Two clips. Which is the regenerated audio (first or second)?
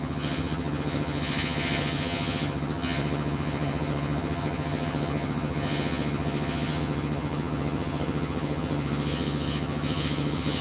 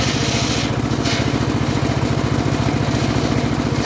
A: first